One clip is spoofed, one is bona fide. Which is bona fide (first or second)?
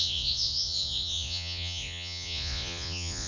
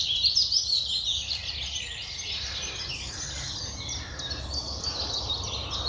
second